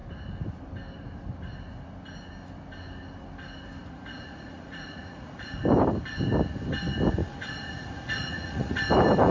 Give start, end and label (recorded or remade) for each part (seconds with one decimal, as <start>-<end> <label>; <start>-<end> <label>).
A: 0.0-3.8 recorded; 3.8-5.6 remade; 5.6-7.2 recorded; 7.2-8.8 remade; 8.8-9.3 recorded